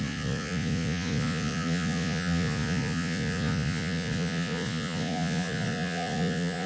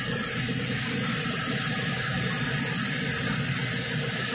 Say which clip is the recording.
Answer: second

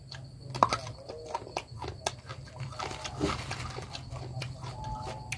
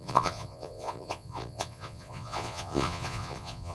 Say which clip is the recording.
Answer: first